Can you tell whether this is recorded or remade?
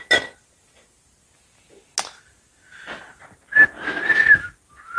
recorded